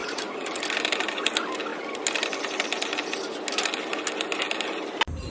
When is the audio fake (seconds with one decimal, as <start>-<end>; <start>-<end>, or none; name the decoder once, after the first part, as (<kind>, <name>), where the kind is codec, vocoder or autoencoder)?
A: 0.0-0.6 (vocoder, Vocos)